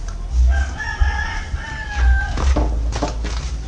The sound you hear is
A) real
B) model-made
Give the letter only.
A